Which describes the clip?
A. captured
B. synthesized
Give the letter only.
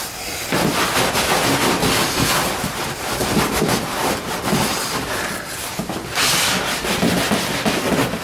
A